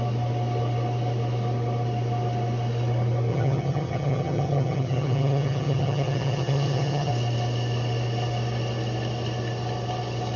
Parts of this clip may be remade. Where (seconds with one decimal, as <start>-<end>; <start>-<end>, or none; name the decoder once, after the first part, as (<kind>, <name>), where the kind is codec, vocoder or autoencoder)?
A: 3.3-7.1 (vocoder, HiFi-GAN)